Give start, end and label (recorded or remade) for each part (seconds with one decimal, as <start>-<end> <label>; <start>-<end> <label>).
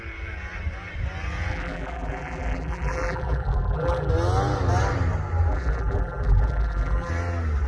0.0-1.5 recorded; 1.5-4.1 remade; 4.1-5.5 recorded; 5.5-7.1 remade; 7.1-7.7 recorded